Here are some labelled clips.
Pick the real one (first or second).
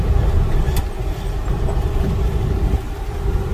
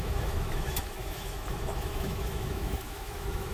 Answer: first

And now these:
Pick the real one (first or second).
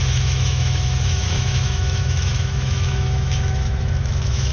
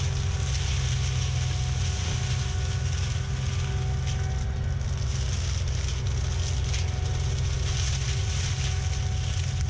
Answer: second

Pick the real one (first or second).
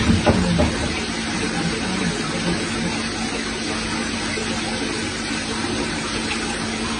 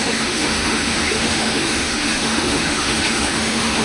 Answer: first